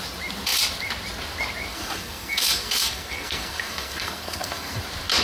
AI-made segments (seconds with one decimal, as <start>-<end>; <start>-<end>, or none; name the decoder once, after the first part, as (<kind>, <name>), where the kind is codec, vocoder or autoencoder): 1.7-4.8 (codec, SNAC)